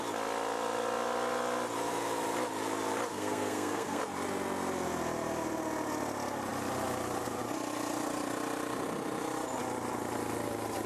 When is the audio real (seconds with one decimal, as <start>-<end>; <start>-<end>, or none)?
0.0-3.1; 4.0-10.9